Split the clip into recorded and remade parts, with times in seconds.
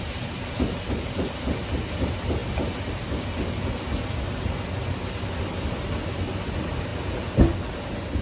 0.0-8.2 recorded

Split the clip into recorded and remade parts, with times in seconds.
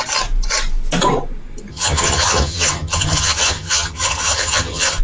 0.0-1.7 recorded; 1.7-5.0 remade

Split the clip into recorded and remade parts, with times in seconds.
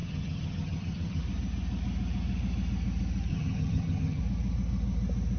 0.0-1.2 remade; 1.2-3.3 recorded; 3.3-4.2 remade; 4.2-5.4 recorded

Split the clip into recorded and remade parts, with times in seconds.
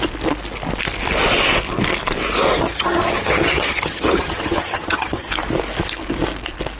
0.0-2.6 recorded; 2.6-5.3 remade; 5.3-6.8 recorded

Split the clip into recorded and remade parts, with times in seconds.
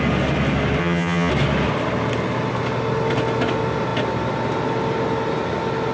0.0-0.8 recorded; 0.8-1.3 remade; 1.3-5.9 recorded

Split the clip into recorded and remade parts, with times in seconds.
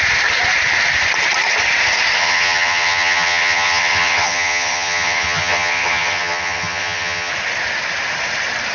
0.0-2.2 recorded; 2.2-7.3 remade; 7.3-8.7 recorded